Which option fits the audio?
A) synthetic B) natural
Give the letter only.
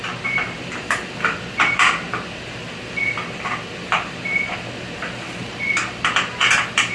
A